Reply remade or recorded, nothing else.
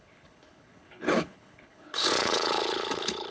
remade